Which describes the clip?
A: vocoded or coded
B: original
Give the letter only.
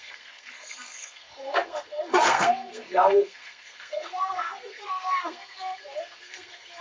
A